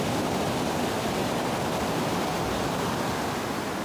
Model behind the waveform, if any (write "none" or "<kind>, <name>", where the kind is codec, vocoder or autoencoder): none